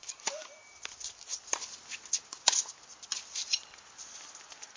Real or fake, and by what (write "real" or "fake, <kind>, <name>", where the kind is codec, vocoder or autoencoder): real